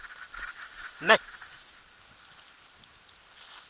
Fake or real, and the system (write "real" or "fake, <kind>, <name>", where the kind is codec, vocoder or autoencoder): real